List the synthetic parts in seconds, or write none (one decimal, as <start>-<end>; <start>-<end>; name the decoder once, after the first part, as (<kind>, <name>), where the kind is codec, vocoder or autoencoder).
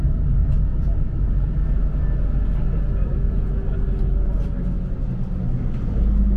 none